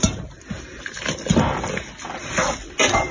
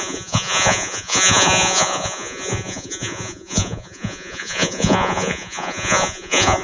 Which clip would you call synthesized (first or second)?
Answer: second